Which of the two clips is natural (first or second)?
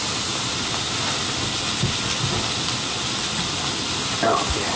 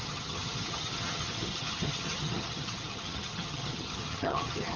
first